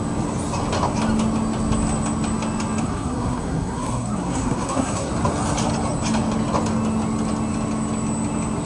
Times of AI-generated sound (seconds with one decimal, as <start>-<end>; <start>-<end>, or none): 2.8-5.1